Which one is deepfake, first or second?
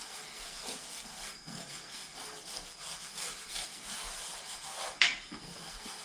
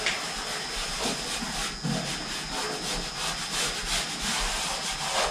first